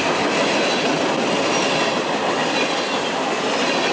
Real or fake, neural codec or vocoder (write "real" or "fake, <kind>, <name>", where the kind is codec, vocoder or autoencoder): real